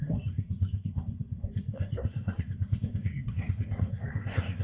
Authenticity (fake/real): fake